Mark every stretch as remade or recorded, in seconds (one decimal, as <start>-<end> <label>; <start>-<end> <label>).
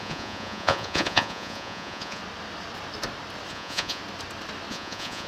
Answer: 0.0-2.2 remade; 2.2-3.5 recorded; 3.5-4.0 remade; 4.0-4.7 recorded; 4.7-5.3 remade